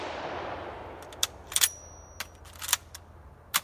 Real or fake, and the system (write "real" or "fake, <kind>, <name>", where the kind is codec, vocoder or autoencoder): real